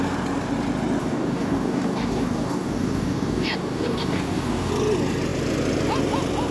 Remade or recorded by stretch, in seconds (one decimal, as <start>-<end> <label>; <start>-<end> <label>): 0.0-1.0 recorded; 1.0-4.7 remade; 4.7-6.5 recorded